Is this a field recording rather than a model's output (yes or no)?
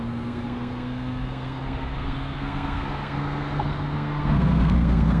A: no